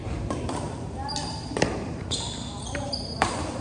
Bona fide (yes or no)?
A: no